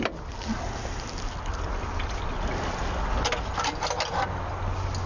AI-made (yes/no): no